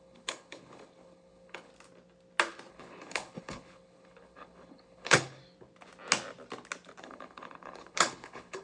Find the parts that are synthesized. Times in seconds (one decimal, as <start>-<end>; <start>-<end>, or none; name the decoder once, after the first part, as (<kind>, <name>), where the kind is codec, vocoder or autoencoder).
0.0-1.7 (codec, HILCodec); 2.7-5.4; 7.0-8.6